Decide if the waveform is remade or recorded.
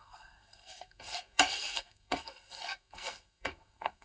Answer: remade